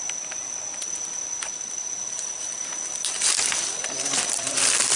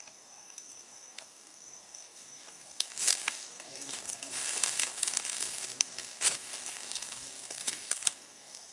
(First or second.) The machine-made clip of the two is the second